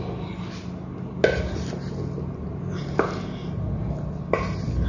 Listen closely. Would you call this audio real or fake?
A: real